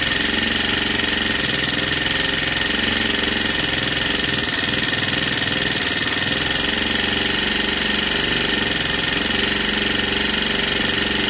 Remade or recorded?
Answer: recorded